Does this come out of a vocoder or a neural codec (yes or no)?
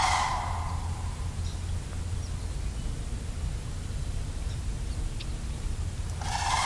no